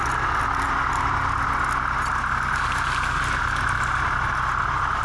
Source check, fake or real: real